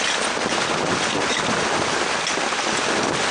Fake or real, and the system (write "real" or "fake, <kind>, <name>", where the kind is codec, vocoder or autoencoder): real